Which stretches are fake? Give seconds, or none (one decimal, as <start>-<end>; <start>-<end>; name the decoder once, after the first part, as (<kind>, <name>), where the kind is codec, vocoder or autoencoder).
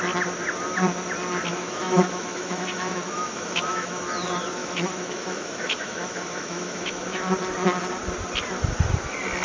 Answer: 1.5-4.0 (autoencoder, DAC-VAE); 4.6-7.2